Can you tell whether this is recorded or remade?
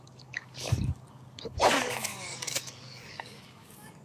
remade